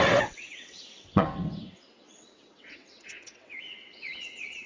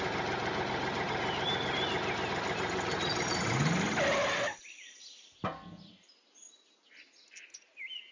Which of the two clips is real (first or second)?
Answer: second